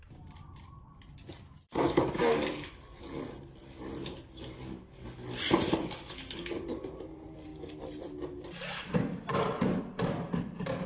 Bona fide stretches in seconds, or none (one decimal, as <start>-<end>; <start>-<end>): 0.0-10.9